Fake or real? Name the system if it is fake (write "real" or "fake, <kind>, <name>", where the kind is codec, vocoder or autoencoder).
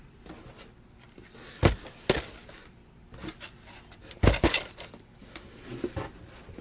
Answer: real